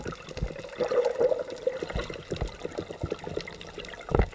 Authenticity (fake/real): real